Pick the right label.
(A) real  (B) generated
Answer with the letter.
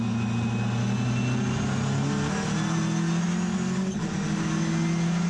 A